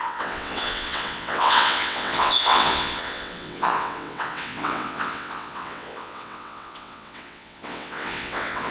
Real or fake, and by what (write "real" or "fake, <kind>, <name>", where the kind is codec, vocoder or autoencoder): fake, vocoder, WaveNeXt